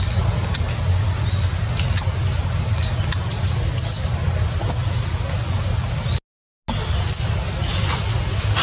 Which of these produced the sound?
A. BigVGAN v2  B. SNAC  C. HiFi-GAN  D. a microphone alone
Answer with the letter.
D